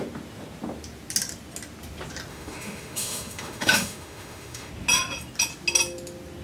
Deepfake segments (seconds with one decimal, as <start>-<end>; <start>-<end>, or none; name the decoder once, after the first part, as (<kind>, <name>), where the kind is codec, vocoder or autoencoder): 2.3-4.7 (autoencoder, DAC-VAE)